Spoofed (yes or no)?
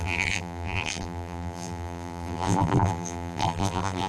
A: yes